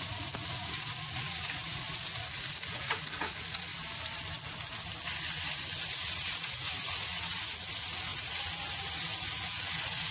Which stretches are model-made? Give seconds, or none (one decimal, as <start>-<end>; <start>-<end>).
0.0-3.7; 5.8-10.1